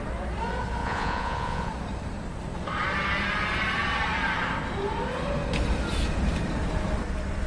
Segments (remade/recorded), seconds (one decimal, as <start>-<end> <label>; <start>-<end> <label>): 0.0-0.8 recorded; 0.8-1.7 remade; 1.7-7.5 recorded